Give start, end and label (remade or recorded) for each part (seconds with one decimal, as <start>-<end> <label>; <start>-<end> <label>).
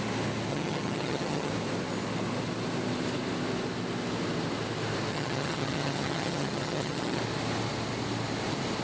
0.0-0.5 recorded; 0.5-1.5 remade; 1.5-5.1 recorded; 5.1-7.2 remade; 7.2-8.8 recorded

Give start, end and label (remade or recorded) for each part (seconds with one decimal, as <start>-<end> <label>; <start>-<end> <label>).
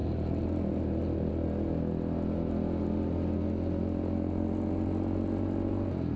0.0-6.2 recorded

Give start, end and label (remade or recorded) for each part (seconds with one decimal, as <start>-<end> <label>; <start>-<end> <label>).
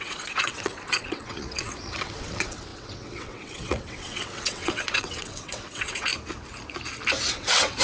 0.0-6.1 remade; 6.1-7.3 recorded; 7.3-7.8 remade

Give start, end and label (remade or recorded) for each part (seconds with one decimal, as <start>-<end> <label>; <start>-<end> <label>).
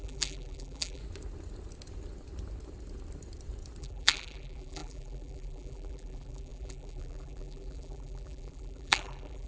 0.0-1.0 remade; 1.0-3.8 recorded; 3.8-9.5 remade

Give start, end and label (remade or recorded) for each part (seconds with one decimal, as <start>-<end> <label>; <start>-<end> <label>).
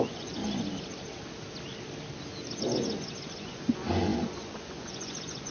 0.0-0.4 remade; 0.4-2.6 recorded; 2.6-5.5 remade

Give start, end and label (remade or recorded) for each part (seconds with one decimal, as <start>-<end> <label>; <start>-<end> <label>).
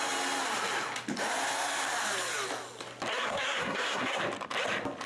0.0-3.1 recorded; 3.1-4.2 remade; 4.2-5.1 recorded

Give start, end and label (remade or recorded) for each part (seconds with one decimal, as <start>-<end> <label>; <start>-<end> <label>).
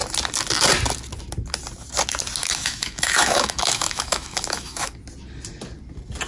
0.0-2.4 recorded; 2.4-4.9 remade; 4.9-6.3 recorded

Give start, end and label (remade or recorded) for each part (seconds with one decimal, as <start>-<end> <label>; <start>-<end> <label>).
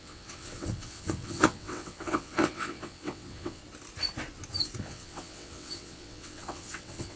0.0-3.6 remade; 3.6-4.8 recorded; 4.8-7.2 remade